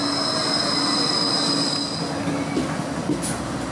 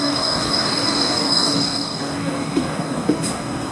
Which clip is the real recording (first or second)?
first